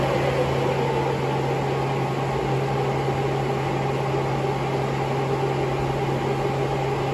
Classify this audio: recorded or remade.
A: recorded